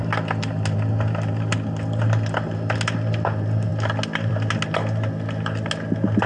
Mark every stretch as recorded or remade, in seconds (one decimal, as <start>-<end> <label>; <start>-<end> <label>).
0.0-6.3 recorded